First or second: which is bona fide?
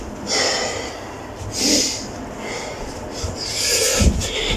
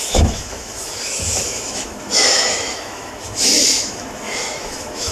first